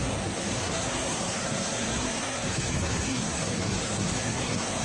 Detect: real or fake fake